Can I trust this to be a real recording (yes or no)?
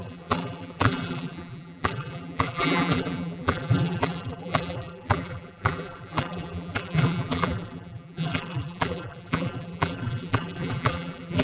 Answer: no